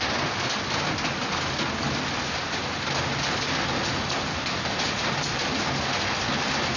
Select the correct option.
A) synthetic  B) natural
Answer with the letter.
B